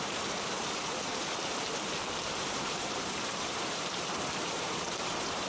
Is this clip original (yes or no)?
no